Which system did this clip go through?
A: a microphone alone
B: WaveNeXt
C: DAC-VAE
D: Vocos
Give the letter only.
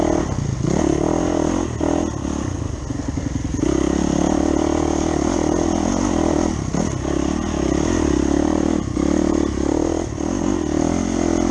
A